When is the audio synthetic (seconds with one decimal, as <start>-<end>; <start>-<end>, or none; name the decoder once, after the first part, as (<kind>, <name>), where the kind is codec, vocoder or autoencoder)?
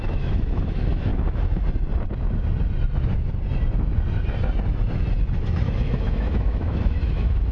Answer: 0.0-1.1 (autoencoder, DAC-VAE); 5.4-7.5